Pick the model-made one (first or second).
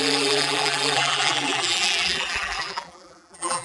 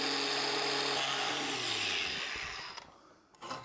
first